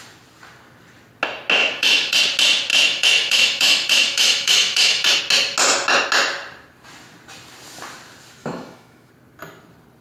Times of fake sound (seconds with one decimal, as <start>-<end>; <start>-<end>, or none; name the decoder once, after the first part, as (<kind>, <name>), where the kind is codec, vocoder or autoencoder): 1.6-2.2 (autoencoder, DAC-VAE); 2.7-5.2; 8.4-9.1